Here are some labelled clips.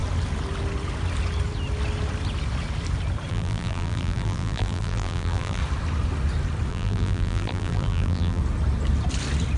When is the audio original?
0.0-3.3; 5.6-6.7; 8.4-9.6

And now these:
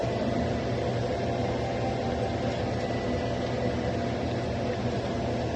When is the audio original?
1.1-5.6

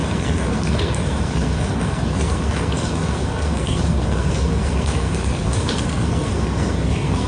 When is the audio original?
none